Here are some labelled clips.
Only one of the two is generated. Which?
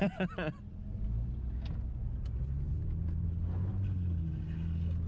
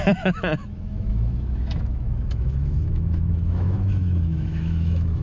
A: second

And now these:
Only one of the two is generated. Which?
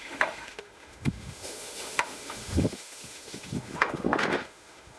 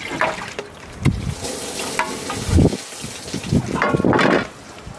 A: first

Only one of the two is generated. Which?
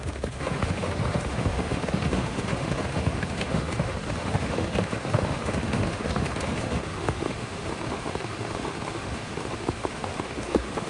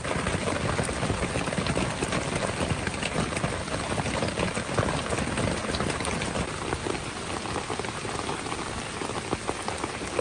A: first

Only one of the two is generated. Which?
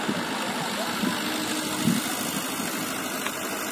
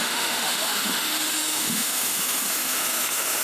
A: second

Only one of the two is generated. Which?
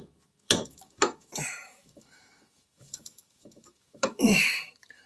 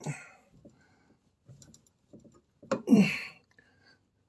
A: first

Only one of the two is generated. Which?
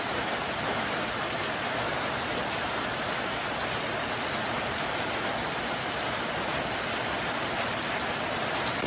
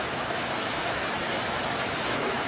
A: second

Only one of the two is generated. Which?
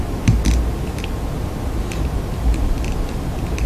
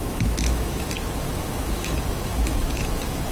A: second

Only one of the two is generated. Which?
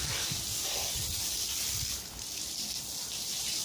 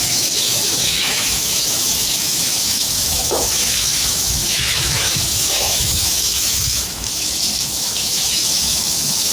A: second